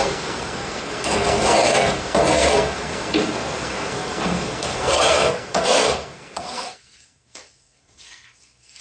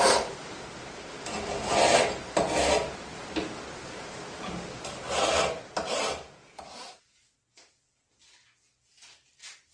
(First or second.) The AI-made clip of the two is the first